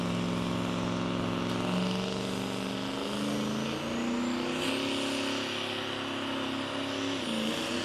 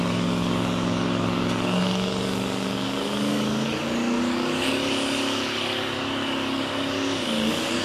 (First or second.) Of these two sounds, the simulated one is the second